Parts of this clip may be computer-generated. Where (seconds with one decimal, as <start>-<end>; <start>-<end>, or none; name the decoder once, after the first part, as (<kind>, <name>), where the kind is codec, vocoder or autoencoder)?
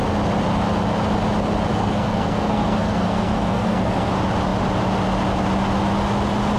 1.7-4.1 (codec, SNAC)